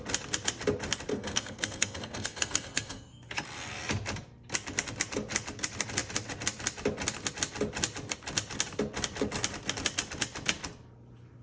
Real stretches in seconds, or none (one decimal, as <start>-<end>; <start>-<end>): 0.0-1.1; 3.3-11.4